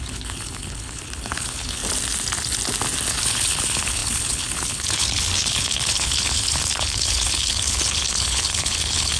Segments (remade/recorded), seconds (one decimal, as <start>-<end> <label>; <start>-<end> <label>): 0.0-1.8 remade; 1.8-3.1 recorded; 3.1-9.2 remade